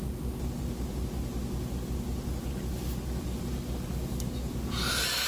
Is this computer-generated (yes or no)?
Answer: no